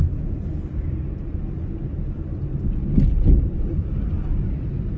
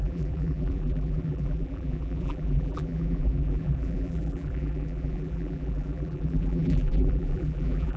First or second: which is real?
first